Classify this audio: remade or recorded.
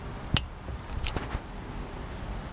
recorded